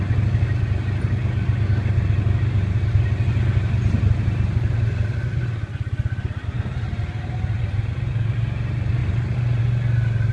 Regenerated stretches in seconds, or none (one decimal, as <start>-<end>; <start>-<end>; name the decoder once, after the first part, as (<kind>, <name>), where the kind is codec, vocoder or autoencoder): none

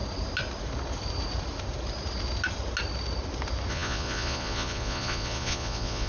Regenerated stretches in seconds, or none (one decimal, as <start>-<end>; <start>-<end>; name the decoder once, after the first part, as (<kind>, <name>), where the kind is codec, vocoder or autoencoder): 3.7-6.1 (vocoder, Vocos)

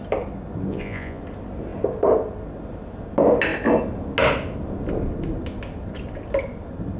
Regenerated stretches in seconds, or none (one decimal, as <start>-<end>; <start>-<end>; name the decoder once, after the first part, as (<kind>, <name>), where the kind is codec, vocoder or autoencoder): 0.7-1.2 (vocoder, Vocos)

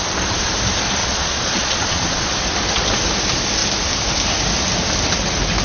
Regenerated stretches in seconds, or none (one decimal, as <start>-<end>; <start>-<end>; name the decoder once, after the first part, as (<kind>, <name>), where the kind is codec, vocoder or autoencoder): 1.0-2.3 (vocoder, Vocos)

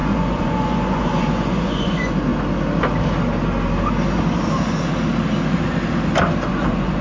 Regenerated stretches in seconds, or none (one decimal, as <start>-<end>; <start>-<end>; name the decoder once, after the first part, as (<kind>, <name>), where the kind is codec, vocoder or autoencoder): 0.0-2.3 (vocoder, Vocos); 6.5-7.0